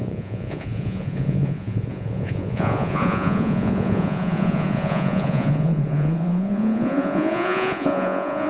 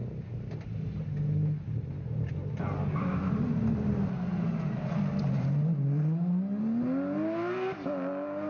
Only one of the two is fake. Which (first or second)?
first